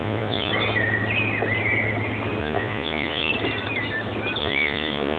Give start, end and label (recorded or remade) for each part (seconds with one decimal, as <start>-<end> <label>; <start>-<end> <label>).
0.0-0.5 remade; 0.5-2.4 recorded; 2.4-3.3 remade; 3.3-4.4 recorded; 4.4-5.2 remade